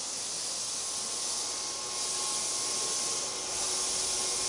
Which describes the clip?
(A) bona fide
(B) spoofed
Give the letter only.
A